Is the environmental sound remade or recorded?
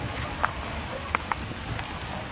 recorded